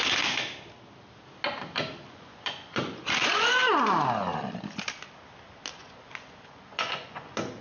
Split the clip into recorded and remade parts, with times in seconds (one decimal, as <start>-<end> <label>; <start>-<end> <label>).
0.0-2.1 recorded; 2.1-3.6 remade; 3.6-5.7 recorded; 5.7-7.6 remade